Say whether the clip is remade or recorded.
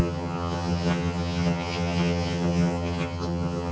remade